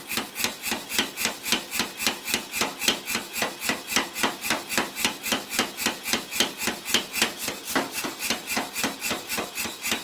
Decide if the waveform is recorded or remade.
recorded